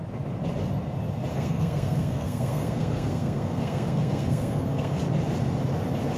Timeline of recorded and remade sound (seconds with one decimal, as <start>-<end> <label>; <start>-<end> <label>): 0.0-1.3 recorded; 1.3-5.0 remade; 5.0-6.2 recorded